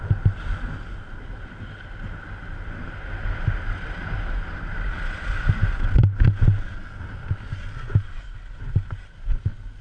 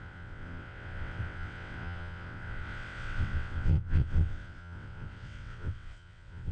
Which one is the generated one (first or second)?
second